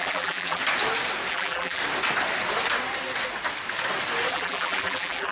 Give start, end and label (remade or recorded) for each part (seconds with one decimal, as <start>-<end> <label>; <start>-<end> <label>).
0.0-0.6 remade; 0.6-1.3 recorded; 1.3-1.8 remade; 1.8-4.3 recorded; 4.3-5.3 remade